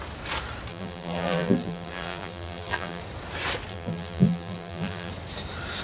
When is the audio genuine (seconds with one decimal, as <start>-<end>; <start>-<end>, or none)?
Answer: 0.0-0.7; 3.0-3.7; 5.1-5.8